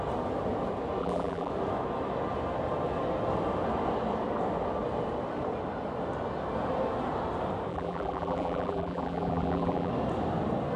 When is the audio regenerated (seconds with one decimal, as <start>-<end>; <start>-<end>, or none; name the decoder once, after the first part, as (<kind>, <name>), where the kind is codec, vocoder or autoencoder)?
1.0-1.5 (vocoder, BigVGAN v2); 7.7-9.9